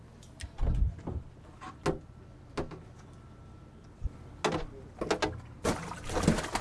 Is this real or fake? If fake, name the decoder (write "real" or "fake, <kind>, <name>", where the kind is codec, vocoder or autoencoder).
real